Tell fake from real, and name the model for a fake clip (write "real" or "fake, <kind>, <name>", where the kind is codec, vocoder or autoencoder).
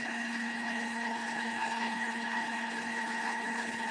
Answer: fake, codec, HILCodec